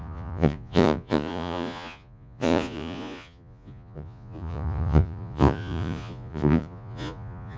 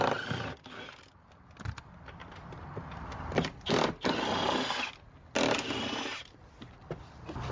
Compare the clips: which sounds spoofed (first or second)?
first